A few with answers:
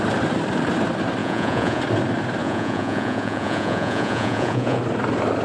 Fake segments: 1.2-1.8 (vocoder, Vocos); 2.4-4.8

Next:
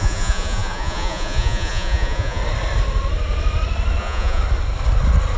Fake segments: 0.0-2.4 (vocoder, Vocos); 4.0-4.4

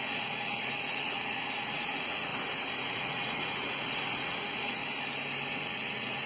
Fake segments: 0.0-2.3 (vocoder, Vocos); 2.8-4.8; 5.5-6.3

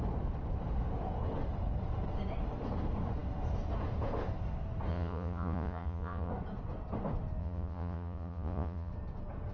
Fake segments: 4.9-6.3 (vocoder, Vocos); 7.4-8.9

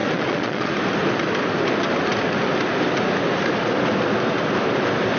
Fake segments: 0.0-0.7 (vocoder, Vocos)